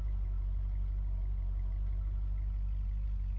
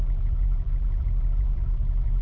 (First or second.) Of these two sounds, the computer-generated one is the second